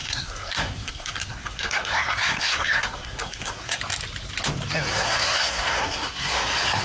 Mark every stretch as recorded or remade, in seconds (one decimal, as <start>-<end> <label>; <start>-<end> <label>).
0.0-3.8 remade; 3.8-4.9 recorded; 4.9-6.8 remade